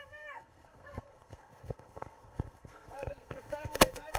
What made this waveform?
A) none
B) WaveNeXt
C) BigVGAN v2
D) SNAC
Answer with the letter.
D